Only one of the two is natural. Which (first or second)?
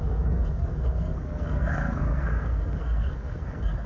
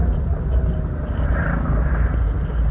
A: second